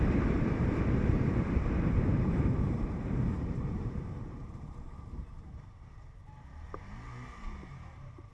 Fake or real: fake